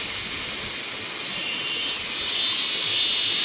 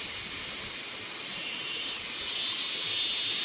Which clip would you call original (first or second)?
first